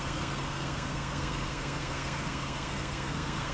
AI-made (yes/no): yes